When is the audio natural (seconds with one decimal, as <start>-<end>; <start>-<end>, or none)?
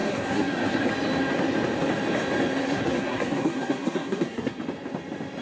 0.9-2.6; 4.6-5.4